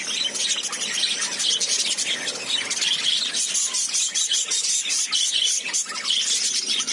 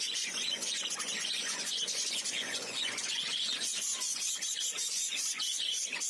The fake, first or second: second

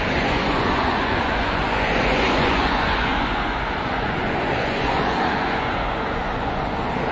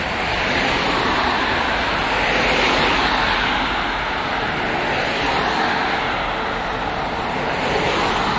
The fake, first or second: first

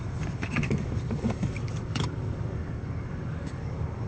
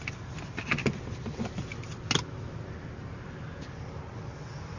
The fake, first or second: first